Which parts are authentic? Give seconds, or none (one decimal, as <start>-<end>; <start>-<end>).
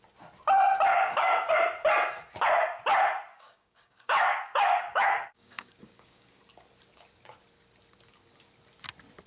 0.0-0.9; 1.5-3.3; 6.4-9.3